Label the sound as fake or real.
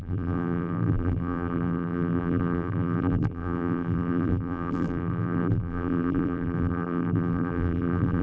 fake